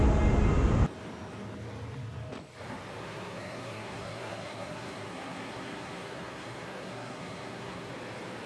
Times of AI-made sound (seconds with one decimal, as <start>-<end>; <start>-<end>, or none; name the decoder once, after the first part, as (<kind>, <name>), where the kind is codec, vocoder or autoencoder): 3.0-7.9 (codec, SNAC)